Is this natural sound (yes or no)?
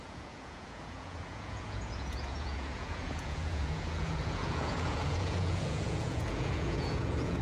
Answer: no